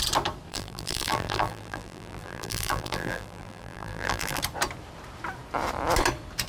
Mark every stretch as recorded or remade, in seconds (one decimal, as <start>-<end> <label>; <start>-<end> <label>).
0.0-0.5 recorded; 0.5-4.4 remade; 4.4-6.5 recorded